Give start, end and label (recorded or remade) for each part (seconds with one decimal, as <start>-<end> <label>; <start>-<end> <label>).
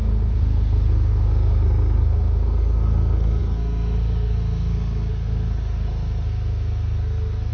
0.0-7.5 remade